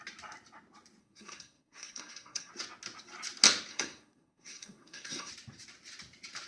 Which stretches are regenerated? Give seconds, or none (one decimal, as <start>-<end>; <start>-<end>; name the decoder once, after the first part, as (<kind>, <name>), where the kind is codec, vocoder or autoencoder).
1.0-2.5 (codec, SNAC); 3.7-5.3